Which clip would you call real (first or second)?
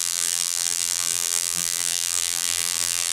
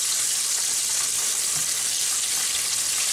second